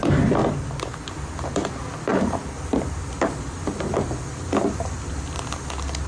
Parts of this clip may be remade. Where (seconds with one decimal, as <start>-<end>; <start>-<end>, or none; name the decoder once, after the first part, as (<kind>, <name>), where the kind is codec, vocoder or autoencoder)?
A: none